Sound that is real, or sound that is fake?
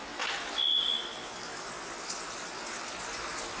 real